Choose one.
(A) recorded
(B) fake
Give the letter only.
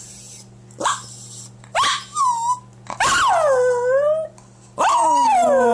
A